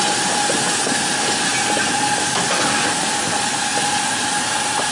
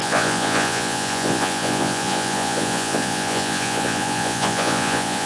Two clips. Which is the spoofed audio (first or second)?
second